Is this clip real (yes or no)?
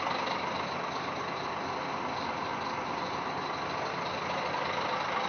yes